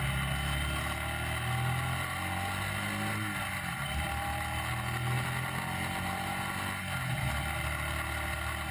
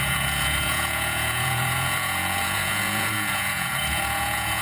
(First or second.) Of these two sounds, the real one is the first